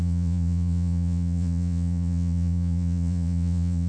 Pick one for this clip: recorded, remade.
remade